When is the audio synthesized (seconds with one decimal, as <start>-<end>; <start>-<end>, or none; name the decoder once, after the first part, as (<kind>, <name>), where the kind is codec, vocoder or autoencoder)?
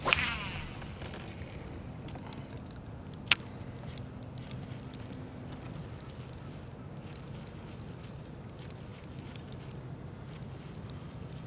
none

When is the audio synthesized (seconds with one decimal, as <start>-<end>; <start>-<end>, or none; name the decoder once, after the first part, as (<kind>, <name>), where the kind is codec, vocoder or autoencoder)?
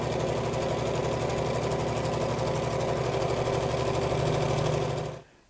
none